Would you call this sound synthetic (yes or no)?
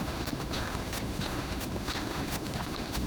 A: yes